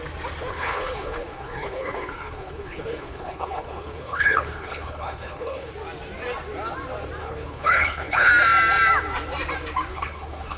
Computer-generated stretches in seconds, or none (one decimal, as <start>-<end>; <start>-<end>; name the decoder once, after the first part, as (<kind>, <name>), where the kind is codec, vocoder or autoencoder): 0.5-5.7 (codec, HILCodec); 7.2-8.3; 9.9-10.6